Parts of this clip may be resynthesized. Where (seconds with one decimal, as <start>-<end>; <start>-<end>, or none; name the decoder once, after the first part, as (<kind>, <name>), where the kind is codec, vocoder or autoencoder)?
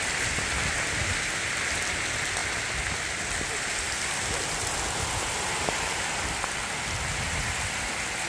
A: none